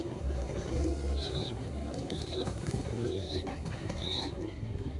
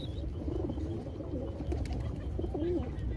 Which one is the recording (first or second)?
second